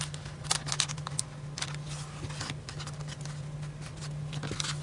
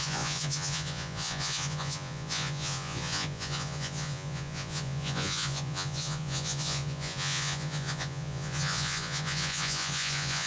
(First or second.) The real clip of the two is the first